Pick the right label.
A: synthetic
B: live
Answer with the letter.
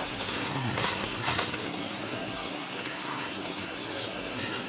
A